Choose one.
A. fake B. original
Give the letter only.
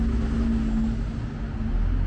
B